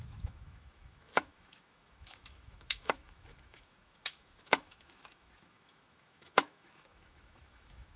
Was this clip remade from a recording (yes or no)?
yes